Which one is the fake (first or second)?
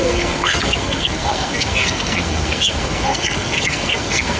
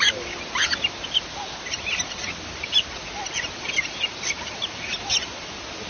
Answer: first